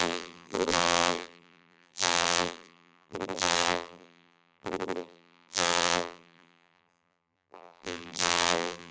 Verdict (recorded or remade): remade